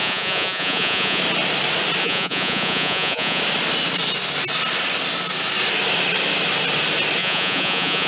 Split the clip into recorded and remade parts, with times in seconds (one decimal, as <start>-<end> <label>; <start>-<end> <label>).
0.0-1.2 remade; 1.2-2.0 recorded; 2.0-3.4 remade; 3.4-7.2 recorded; 7.2-8.1 remade